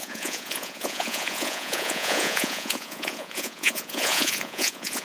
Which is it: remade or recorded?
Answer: remade